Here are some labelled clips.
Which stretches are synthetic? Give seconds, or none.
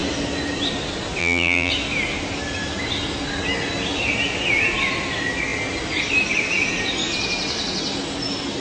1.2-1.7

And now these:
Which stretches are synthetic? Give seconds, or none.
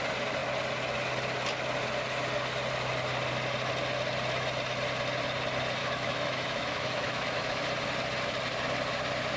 5.8-7.6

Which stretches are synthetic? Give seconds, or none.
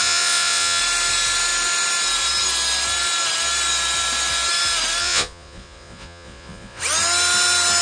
0.0-0.8; 5.0-6.8